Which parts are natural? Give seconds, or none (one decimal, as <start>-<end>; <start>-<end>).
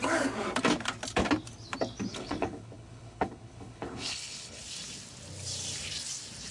0.0-2.1; 4.6-6.5